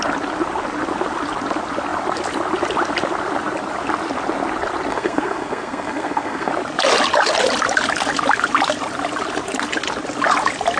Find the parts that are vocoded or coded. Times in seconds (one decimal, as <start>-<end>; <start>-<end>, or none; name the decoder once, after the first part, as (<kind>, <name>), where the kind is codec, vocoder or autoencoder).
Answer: 4.9-6.5 (codec, SNAC)